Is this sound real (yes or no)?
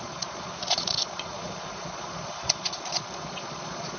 no